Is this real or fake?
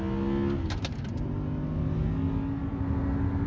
real